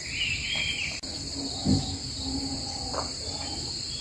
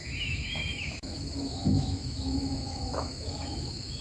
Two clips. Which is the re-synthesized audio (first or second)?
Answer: second